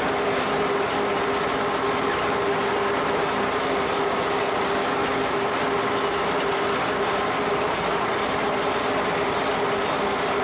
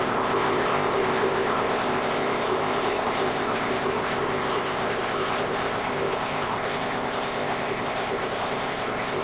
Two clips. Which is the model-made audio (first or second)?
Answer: second